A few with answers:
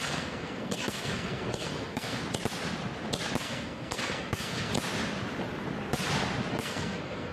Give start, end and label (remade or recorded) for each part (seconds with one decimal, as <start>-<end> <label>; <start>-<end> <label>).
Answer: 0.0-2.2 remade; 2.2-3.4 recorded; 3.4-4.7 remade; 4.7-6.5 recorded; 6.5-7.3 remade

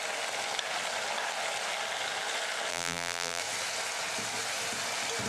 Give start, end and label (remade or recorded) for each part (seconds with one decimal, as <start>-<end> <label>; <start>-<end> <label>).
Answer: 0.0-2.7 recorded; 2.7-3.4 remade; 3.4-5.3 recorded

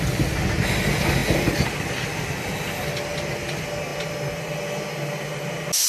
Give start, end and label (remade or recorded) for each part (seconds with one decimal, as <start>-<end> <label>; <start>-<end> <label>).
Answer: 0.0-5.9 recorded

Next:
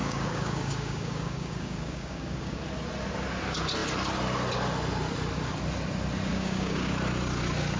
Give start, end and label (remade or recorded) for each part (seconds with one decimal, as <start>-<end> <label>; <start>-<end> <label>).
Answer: 0.0-2.6 remade; 2.6-6.3 recorded; 6.3-6.9 remade; 6.9-7.8 recorded

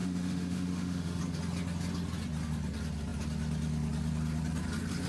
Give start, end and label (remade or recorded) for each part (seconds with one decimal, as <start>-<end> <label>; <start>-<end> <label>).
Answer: 0.0-1.2 remade; 1.2-5.1 recorded